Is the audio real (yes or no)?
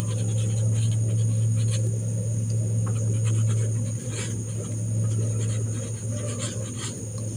yes